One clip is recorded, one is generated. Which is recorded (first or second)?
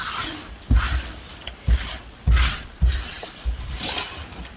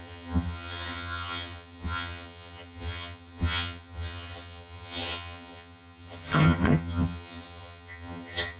first